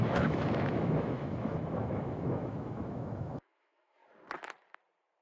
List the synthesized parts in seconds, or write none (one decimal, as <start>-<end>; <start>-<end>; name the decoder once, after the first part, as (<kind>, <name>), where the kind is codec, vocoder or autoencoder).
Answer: 0.0-4.0 (autoencoder, DAC-VAE)

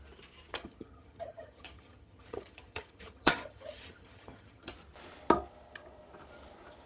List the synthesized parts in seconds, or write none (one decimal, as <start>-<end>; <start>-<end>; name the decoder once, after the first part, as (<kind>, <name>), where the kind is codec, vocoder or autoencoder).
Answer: 0.6-4.7 (vocoder, HiFi-GAN)

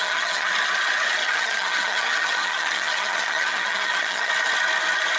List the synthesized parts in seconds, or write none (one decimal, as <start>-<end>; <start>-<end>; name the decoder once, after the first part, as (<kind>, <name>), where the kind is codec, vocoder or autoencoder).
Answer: 0.0-0.5 (vocoder, HiFi-GAN); 1.2-4.3